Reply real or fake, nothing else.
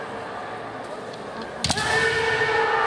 real